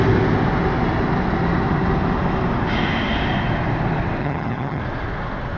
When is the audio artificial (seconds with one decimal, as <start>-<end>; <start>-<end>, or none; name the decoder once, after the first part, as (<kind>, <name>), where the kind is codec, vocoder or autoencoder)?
4.2-4.8 (vocoder, HiFi-GAN)